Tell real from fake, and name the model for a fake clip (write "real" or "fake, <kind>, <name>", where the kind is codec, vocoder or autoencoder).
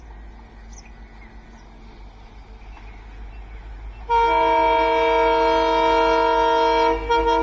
real